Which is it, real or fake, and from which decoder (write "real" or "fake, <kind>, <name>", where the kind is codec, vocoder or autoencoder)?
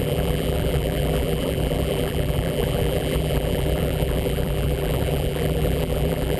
fake, vocoder, BigVGAN v2